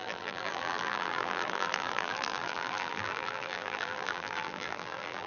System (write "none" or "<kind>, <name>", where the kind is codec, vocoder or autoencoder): vocoder, BigVGAN v2